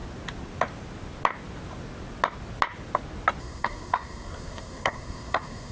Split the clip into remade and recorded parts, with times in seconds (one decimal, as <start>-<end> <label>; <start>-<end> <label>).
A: 0.0-3.4 recorded; 3.4-5.7 remade